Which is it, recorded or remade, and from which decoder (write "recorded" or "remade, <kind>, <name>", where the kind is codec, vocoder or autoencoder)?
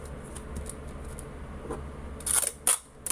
recorded